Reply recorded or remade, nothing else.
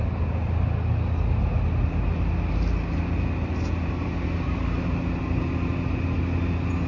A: recorded